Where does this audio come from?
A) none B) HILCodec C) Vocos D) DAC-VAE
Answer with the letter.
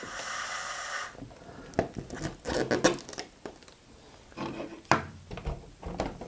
A